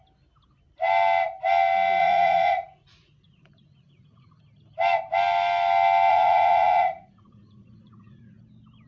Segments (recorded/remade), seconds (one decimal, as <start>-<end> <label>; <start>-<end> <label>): 0.0-2.0 recorded; 2.0-4.4 remade; 4.4-6.1 recorded; 6.1-8.4 remade; 8.4-8.9 recorded